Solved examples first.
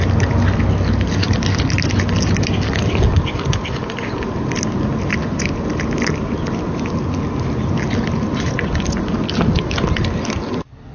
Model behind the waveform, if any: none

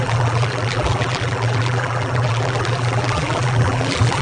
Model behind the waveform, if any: vocoder, BigVGAN v2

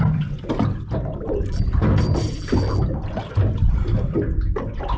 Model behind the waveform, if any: none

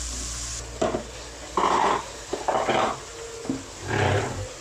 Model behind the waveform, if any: none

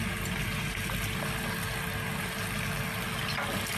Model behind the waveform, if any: none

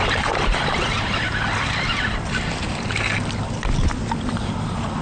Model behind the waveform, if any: none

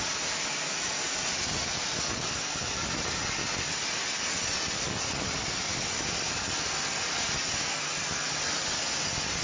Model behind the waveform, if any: none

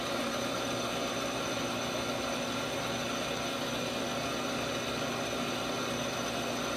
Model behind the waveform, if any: none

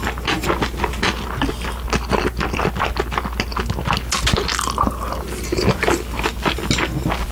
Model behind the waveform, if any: none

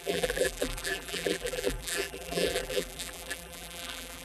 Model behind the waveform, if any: vocoder, BigVGAN v2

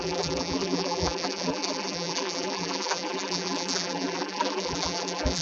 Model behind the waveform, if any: vocoder, BigVGAN v2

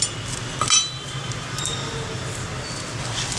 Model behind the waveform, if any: vocoder, BigVGAN v2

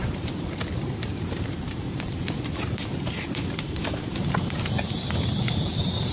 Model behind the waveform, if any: vocoder, BigVGAN v2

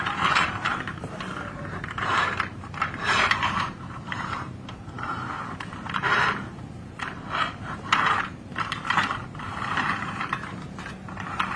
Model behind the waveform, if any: vocoder, BigVGAN v2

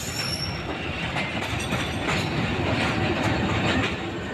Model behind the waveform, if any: vocoder, BigVGAN v2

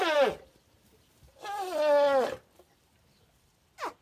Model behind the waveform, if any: none